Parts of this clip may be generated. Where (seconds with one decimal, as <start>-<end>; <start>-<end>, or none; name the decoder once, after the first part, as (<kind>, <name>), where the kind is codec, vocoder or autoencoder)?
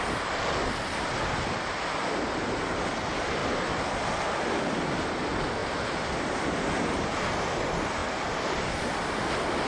none